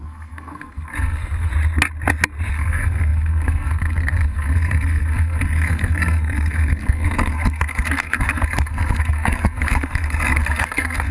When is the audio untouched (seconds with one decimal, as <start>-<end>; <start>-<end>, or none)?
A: 1.5-2.5